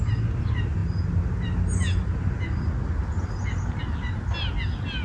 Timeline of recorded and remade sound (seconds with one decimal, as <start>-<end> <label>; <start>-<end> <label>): 0.0-5.0 recorded